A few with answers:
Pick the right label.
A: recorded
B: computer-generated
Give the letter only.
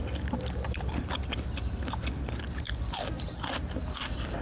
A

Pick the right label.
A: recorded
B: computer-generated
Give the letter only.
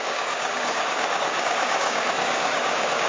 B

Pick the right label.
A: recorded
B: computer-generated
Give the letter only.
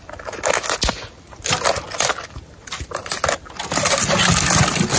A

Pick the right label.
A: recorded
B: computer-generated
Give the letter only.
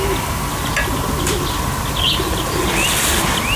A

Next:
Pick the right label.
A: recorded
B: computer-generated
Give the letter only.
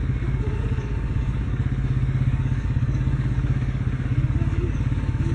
B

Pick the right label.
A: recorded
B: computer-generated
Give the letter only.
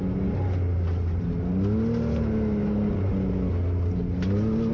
A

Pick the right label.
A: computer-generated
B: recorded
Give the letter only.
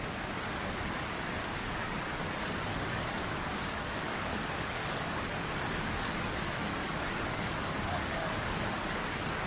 A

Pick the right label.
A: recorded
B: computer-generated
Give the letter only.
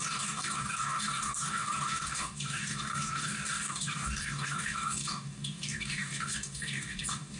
B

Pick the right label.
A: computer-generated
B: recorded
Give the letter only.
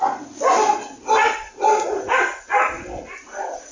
B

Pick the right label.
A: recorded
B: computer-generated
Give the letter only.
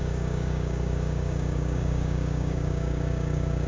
B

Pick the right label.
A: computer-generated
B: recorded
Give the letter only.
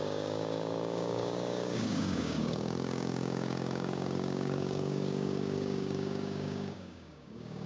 A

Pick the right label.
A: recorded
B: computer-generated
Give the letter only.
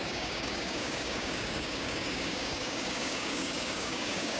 B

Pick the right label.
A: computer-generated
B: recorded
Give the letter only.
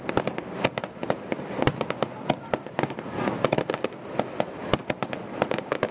B